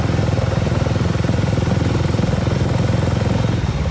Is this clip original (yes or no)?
yes